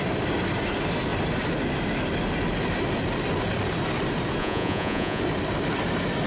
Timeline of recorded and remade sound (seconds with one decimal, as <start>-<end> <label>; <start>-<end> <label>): 0.0-4.4 recorded; 4.4-5.2 remade; 5.2-6.3 recorded